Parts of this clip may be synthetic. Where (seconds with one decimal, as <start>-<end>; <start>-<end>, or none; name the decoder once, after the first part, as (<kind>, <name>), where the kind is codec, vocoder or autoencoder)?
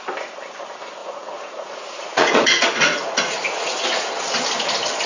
1.0-4.1 (vocoder, Vocos)